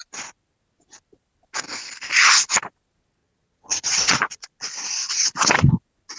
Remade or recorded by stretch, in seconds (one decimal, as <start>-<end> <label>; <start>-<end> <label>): 0.0-3.2 recorded; 3.2-4.7 remade; 4.7-6.2 recorded